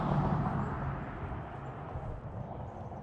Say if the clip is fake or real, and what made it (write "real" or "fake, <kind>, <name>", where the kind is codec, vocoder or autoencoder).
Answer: fake, vocoder, BigVGAN v2